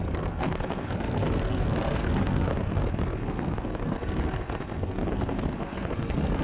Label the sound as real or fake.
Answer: fake